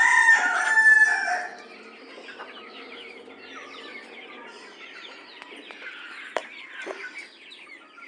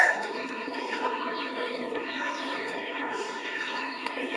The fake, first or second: second